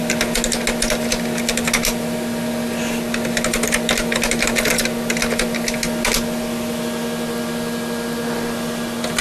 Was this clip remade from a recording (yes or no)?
no